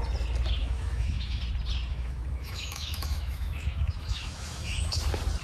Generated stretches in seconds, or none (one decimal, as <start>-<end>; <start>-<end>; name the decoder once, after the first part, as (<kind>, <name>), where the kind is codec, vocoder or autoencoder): 0.6-1.4 (autoencoder, DAC-VAE); 1.9-5.0